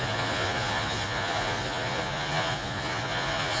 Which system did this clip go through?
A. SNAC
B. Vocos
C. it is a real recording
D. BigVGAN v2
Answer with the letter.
B